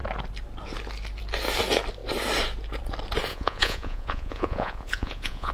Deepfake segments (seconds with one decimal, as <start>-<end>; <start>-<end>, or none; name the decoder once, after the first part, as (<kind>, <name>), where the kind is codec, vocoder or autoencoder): 3.3-5.5 (vocoder, Vocos)